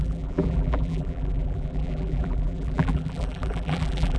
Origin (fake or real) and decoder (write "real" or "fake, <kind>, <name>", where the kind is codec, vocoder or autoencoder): fake, vocoder, BigVGAN v2